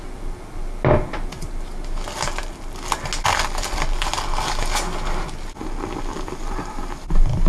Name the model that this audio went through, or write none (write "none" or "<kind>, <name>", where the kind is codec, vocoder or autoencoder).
none